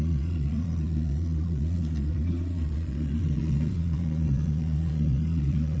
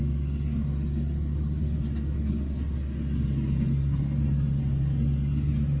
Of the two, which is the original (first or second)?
second